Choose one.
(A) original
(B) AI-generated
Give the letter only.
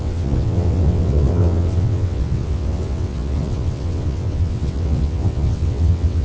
B